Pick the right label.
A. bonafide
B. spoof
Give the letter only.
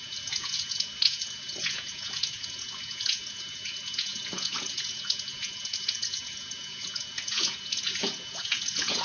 B